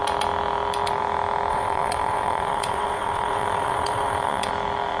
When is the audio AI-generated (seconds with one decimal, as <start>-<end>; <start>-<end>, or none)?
1.5-4.5